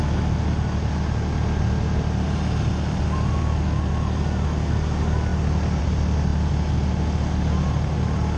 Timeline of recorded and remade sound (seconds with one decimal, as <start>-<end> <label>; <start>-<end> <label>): 0.0-8.4 recorded

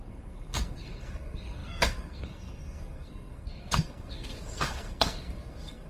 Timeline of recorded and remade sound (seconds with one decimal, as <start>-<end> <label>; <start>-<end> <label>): 0.0-5.9 remade

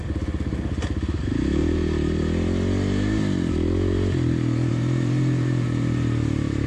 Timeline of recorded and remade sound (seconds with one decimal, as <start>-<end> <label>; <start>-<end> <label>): 0.0-1.6 recorded; 1.6-2.2 remade; 2.2-4.7 recorded; 4.7-6.7 remade

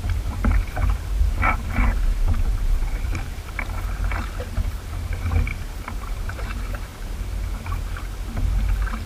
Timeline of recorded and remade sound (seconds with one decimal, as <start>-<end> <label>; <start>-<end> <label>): 0.0-0.8 remade; 0.8-1.6 recorded; 1.6-3.1 remade; 3.1-4.6 recorded; 4.6-6.9 remade; 6.9-9.1 recorded

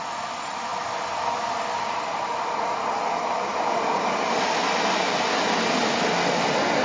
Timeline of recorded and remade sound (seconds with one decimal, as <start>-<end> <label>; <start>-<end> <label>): 0.0-6.8 recorded